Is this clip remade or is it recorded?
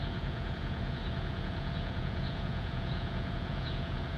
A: remade